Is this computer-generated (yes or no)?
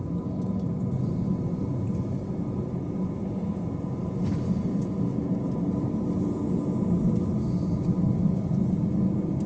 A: no